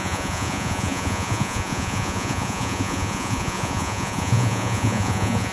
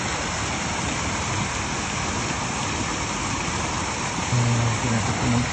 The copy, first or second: first